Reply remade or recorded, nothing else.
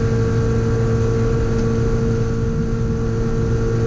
recorded